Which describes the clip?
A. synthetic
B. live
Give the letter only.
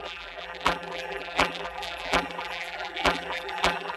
A